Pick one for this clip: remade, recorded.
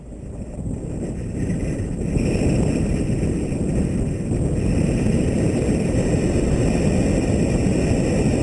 recorded